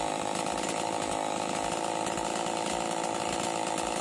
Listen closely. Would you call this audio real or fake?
real